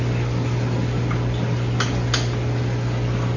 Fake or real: real